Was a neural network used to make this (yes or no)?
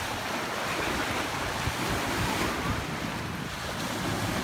no